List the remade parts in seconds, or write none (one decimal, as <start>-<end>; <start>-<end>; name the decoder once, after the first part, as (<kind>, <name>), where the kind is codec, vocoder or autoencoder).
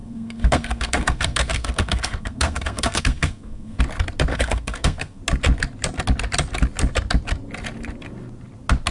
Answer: 0.0-3.8 (codec, SNAC); 4.3-5.2